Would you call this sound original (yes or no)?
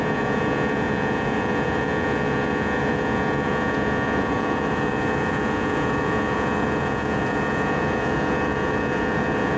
no